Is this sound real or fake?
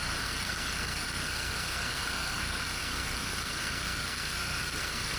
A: fake